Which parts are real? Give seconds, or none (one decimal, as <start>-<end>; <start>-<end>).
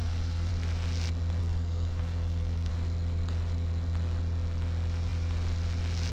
0.5-1.4; 2.7-6.1